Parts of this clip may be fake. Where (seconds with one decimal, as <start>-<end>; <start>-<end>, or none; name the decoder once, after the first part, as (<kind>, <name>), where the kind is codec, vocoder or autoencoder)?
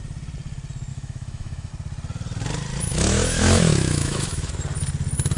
0.9-1.7 (autoencoder, DAC-VAE); 2.9-4.5